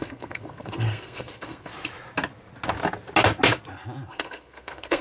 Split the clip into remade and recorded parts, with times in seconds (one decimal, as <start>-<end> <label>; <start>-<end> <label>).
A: 0.0-1.7 remade; 1.7-4.1 recorded; 4.1-5.0 remade